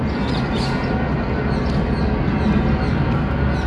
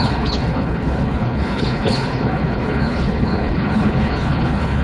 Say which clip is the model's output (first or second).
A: second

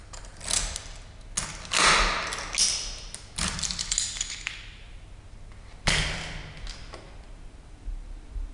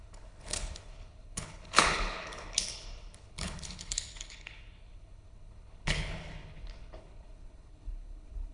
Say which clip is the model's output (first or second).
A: second